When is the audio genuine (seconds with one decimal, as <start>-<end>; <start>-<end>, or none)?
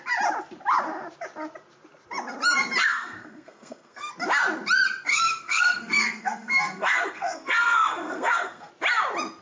0.0-2.9; 4.1-5.1; 8.7-9.4